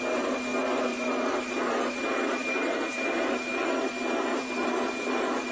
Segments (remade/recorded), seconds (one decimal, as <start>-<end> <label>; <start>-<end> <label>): 0.0-0.9 recorded; 0.9-1.9 remade; 1.9-2.4 recorded; 2.4-3.9 remade; 3.9-4.3 recorded; 4.3-5.5 remade